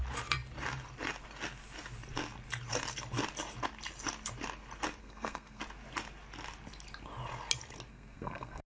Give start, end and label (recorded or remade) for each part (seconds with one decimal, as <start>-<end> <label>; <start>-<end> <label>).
0.0-5.0 recorded; 5.0-5.6 remade; 5.6-7.9 recorded; 7.9-8.7 remade